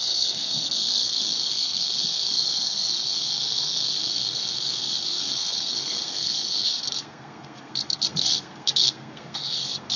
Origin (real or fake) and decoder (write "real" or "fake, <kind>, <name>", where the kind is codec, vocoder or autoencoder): fake, codec, SNAC